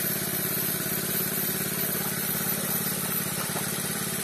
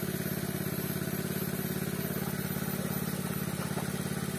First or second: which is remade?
first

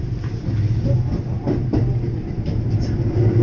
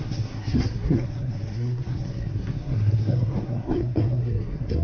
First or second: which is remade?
second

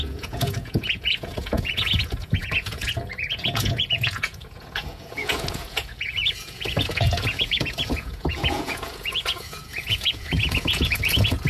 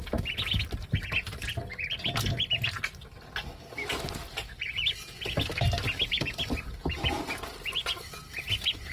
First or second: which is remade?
first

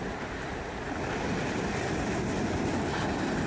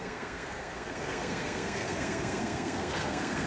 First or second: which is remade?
second